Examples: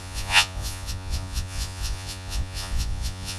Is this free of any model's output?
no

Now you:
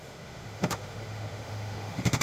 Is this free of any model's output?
no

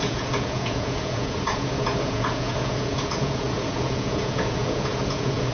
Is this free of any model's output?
no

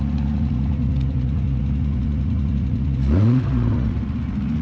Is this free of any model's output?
no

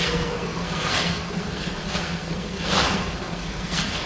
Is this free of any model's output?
no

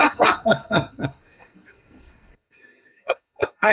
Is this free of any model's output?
no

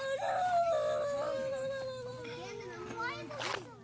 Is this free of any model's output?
yes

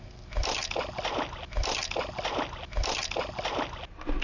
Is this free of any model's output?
yes